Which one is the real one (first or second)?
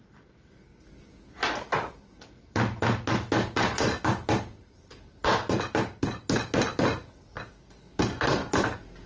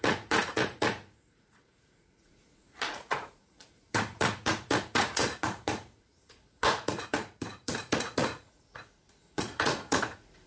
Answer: first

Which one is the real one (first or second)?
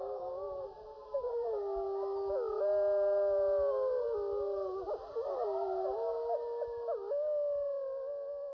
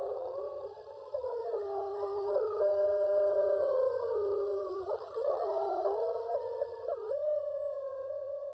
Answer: first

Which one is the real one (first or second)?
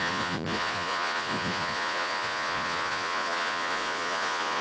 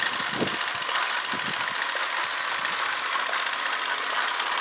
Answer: second